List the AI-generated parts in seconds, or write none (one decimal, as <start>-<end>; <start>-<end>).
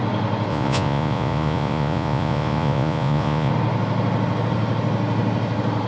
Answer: 0.5-3.5